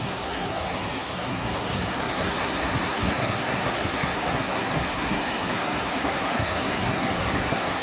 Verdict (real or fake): fake